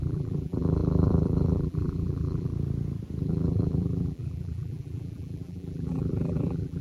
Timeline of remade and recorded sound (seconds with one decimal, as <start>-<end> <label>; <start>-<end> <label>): 0.0-2.5 remade; 2.5-3.2 recorded; 3.2-6.8 remade